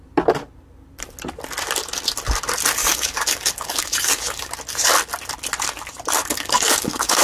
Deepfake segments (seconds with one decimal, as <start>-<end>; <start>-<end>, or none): 2.8-4.5; 6.2-7.2